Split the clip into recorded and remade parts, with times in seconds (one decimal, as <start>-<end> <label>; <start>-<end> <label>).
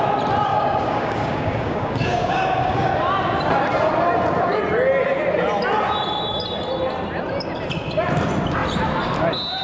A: 0.0-0.5 recorded; 0.5-2.9 remade; 2.9-9.6 recorded